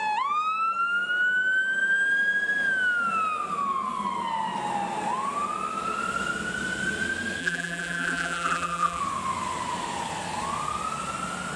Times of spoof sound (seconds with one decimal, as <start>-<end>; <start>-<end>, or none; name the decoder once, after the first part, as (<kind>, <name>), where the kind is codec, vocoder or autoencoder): 7.4-9.0 (vocoder, BigVGAN v2)